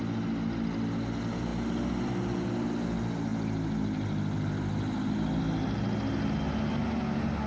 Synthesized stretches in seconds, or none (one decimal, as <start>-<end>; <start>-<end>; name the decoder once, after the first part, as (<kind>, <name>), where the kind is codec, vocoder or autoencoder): none